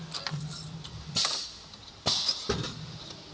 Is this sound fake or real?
real